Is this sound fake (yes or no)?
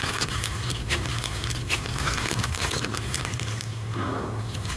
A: yes